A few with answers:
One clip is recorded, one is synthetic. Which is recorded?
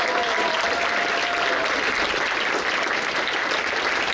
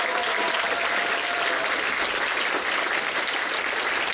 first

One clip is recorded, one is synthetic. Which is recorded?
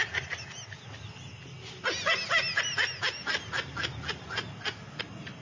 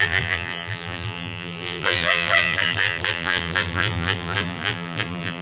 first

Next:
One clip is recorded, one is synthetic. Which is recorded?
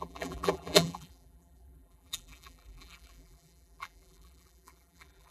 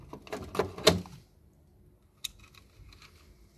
second